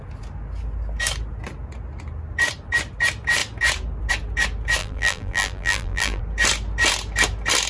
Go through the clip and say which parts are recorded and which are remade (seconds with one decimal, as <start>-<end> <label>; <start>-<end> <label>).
0.0-4.8 recorded; 4.8-6.2 remade; 6.2-7.7 recorded